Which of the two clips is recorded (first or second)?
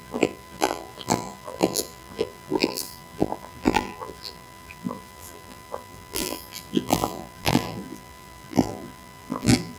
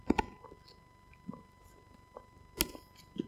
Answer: second